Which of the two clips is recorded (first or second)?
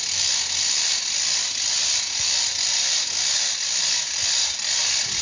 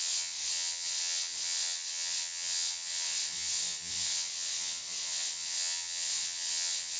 first